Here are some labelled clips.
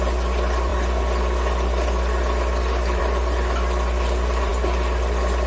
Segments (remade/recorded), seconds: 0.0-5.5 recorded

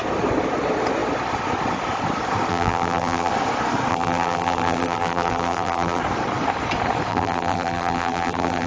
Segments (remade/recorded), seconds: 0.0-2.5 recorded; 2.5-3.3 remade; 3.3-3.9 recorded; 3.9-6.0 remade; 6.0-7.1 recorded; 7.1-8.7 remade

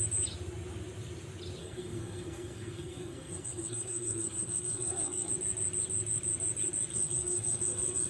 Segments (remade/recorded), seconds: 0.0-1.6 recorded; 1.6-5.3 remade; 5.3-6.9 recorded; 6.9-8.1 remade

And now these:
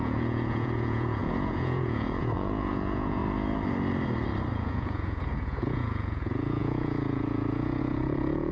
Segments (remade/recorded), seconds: 0.0-3.2 remade; 3.2-4.5 recorded; 4.5-8.5 remade